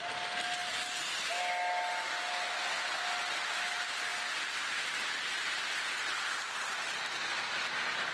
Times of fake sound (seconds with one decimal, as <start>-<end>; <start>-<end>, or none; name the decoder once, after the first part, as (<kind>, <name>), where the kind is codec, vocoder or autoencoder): none